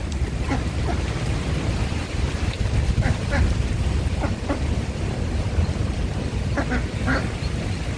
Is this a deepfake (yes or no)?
no